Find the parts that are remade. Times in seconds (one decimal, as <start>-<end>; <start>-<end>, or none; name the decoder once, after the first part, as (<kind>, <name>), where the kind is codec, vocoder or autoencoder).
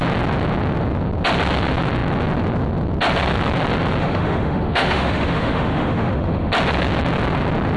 4.0-6.5 (autoencoder, DAC-VAE)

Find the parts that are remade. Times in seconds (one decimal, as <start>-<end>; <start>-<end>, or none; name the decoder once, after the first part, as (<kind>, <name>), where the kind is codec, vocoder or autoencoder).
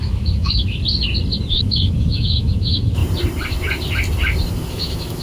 0.0-0.8 (autoencoder, DAC-VAE); 1.5-3.0; 4.5-5.2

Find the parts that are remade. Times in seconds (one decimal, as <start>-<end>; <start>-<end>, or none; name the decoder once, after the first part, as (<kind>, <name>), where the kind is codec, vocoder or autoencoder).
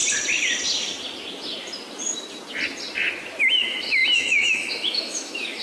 3.4-5.6 (autoencoder, DAC-VAE)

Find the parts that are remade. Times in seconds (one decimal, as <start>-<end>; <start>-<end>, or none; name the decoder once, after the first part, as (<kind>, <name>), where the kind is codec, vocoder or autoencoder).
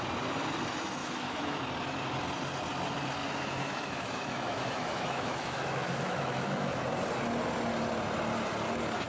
1.0-1.6 (autoencoder, DAC-VAE); 3.2-6.8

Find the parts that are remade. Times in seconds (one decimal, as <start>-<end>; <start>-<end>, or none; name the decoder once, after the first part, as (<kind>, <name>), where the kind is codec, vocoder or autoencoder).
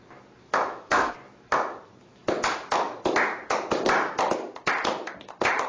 0.4-1.1 (autoencoder, DAC-VAE)